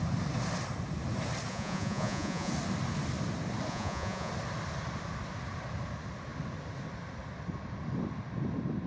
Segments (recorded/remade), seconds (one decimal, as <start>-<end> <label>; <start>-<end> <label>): 0.0-1.5 recorded; 1.5-2.5 remade; 2.5-3.7 recorded; 3.7-4.3 remade; 4.3-8.9 recorded